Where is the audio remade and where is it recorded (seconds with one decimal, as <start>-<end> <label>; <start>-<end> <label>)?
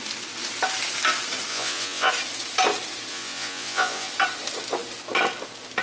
0.0-1.5 recorded; 1.5-2.1 remade; 2.1-3.1 recorded; 3.1-4.1 remade; 4.1-5.8 recorded